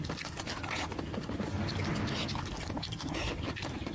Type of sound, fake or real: real